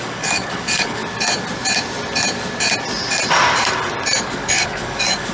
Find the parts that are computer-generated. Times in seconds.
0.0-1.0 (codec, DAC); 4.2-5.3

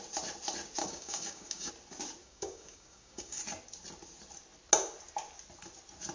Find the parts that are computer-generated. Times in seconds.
0.8-1.7 (codec, DAC); 2.2-3.4

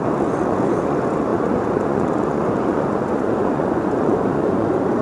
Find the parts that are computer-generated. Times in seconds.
0.0-5.0 (vocoder, Vocos)

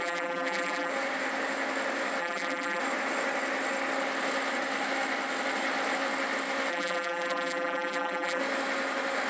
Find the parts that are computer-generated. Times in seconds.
0.0-0.9 (vocoder, BigVGAN v2); 2.2-2.8; 6.7-8.4

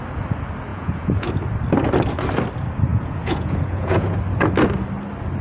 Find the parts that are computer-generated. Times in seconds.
0.7-1.3 (vocoder, Vocos); 2.9-4.2

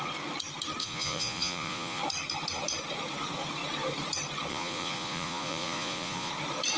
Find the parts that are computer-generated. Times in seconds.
0.8-2.0 (vocoder, Vocos); 4.5-6.3